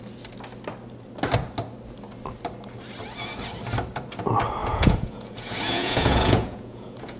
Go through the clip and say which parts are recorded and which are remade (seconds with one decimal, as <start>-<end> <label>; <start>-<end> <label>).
0.0-4.6 recorded; 4.6-7.2 remade